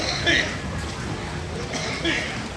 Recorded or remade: recorded